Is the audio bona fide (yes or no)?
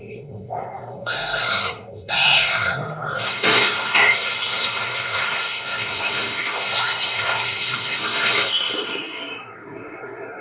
no